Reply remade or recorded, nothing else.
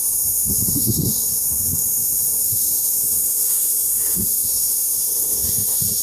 remade